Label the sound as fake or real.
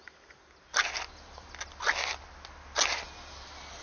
real